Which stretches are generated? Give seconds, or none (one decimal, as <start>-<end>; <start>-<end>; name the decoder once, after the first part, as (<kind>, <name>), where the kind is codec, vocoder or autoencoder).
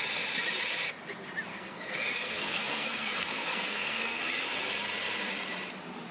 1.5-4.2 (codec, SNAC)